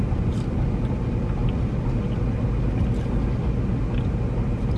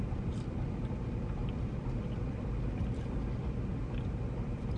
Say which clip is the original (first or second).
first